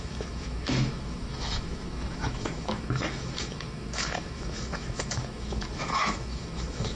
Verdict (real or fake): fake